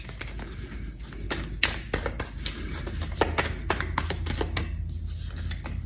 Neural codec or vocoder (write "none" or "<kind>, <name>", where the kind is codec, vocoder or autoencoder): none